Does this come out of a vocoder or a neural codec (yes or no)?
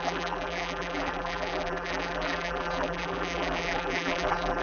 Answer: yes